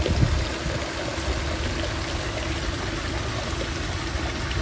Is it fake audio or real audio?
real